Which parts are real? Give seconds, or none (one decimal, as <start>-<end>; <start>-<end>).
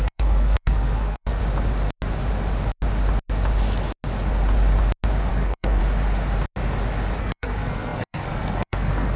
1.4-5.3; 5.8-7.2